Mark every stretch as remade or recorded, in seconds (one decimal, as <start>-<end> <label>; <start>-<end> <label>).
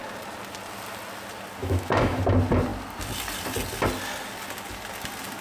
0.0-1.6 recorded; 1.6-2.2 remade; 2.2-5.4 recorded